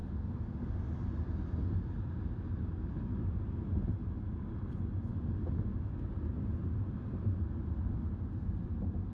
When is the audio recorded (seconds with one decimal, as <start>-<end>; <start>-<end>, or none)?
0.0-9.1